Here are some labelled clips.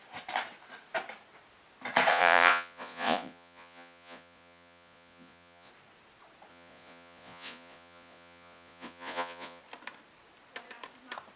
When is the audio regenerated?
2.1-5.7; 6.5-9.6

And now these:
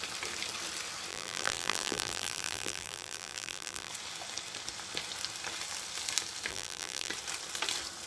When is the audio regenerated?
1.1-3.9; 6.5-7.1

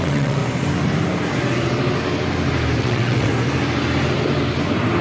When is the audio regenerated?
0.0-0.4; 2.8-3.3

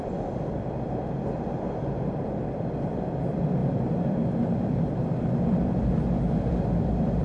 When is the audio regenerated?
0.0-7.2

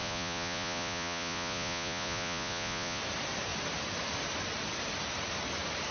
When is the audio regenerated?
0.0-3.0

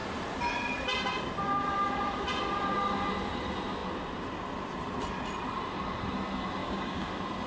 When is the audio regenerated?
6.6-7.1